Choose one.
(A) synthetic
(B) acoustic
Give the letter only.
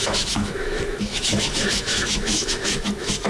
A